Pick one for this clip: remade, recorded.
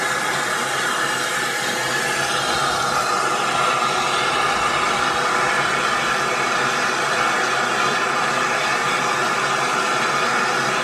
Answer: recorded